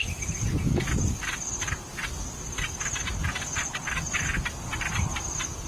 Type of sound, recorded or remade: recorded